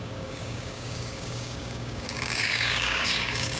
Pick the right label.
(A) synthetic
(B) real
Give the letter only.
A